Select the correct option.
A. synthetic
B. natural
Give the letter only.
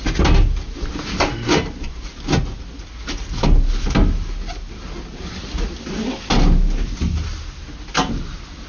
B